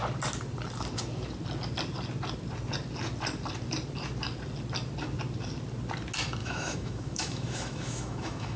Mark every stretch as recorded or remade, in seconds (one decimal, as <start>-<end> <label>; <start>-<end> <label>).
0.0-6.4 recorded; 6.4-8.6 remade